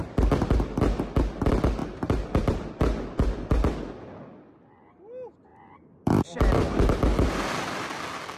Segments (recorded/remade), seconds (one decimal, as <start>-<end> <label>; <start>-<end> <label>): 0.0-1.8 recorded; 1.8-2.7 remade; 2.7-5.5 recorded; 5.5-6.8 remade; 6.8-8.4 recorded